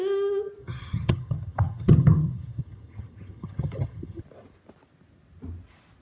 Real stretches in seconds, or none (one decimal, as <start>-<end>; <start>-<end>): 0.0-0.6; 4.2-6.0